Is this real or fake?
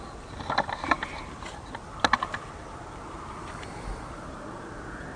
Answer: real